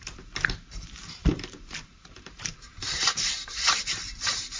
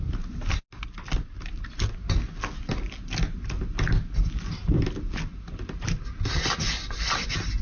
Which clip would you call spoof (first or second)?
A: first